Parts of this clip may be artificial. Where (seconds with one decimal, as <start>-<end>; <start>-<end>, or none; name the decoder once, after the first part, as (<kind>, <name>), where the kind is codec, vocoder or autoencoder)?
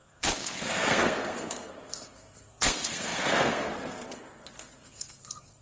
0.0-5.6 (codec, SNAC)